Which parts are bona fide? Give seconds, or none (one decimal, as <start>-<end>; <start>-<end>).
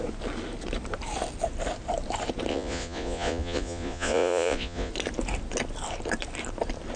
0.0-2.5; 4.9-7.0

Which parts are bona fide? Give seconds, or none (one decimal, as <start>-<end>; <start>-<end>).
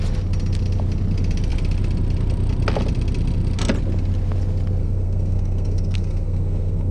0.0-4.8